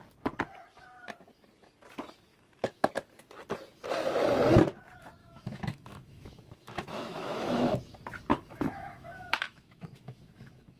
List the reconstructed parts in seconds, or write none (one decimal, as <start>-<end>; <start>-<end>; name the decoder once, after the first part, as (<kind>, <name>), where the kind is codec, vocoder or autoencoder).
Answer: 2.3-2.9 (autoencoder, DAC-VAE); 5.2-7.7; 8.3-10.8